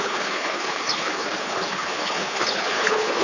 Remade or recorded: remade